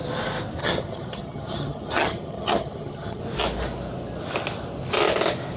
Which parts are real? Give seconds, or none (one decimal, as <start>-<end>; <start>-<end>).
0.0-0.6; 3.2-5.6